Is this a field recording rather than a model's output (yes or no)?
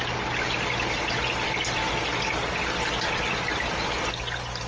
yes